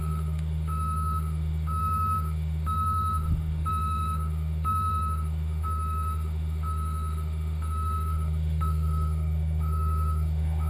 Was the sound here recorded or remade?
remade